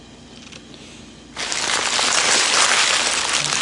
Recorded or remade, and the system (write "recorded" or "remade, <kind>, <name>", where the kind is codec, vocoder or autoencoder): recorded